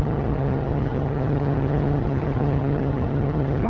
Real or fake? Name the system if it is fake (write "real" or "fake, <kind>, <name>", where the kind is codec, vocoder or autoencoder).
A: fake, vocoder, HiFi-GAN